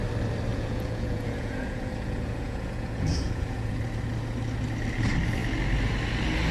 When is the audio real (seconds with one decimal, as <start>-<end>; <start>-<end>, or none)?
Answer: 0.0-0.5; 3.8-6.5